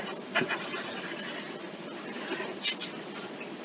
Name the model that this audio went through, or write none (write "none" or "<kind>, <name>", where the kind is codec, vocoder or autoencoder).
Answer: none